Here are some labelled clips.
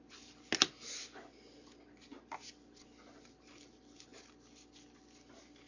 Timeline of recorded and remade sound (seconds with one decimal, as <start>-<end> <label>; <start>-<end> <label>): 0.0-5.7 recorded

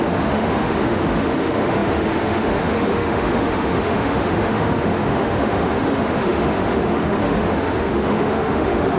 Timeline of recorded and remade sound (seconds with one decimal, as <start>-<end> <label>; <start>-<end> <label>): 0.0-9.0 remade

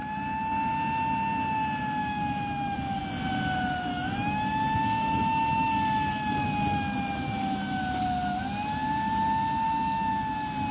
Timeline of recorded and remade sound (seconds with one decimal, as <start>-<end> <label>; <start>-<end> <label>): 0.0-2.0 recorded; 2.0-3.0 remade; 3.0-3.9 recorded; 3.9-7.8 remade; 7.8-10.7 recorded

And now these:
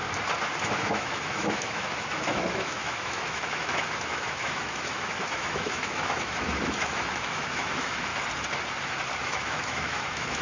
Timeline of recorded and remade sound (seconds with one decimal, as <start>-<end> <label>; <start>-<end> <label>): 0.0-0.6 recorded; 0.6-8.1 remade; 8.1-9.2 recorded; 9.2-10.4 remade

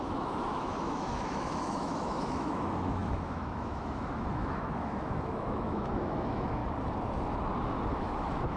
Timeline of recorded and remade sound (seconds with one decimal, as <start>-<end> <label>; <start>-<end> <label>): 0.0-6.6 remade; 6.6-8.0 recorded; 8.0-8.6 remade

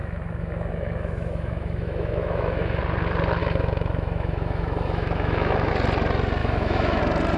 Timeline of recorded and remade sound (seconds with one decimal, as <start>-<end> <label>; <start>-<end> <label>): 0.0-2.8 remade; 2.8-3.4 recorded; 3.4-5.7 remade; 5.7-6.4 recorded; 6.4-7.0 remade; 7.0-7.4 recorded